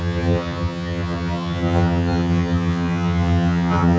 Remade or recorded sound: remade